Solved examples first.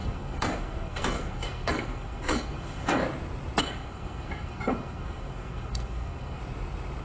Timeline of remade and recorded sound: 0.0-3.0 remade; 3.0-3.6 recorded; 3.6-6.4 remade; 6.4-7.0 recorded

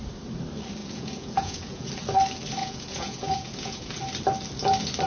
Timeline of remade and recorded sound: 0.0-0.8 recorded; 0.8-1.9 remade; 1.9-2.6 recorded; 2.6-3.9 remade; 3.9-5.1 recorded

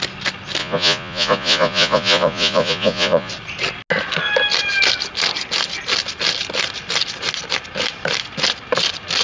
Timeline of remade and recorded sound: 0.0-0.6 recorded; 0.6-3.3 remade; 3.3-9.2 recorded

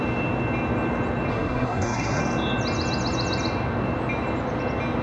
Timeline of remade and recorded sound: 0.0-1.3 recorded; 1.3-2.2 remade; 2.2-5.0 recorded